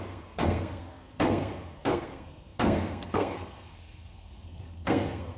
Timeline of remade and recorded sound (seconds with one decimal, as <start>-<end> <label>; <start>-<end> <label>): 0.0-5.4 remade